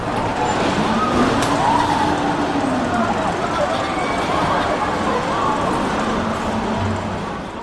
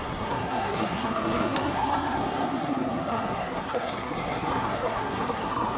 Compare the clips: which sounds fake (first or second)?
second